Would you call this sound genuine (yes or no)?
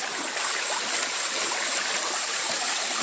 yes